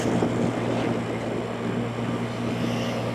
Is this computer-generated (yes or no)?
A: no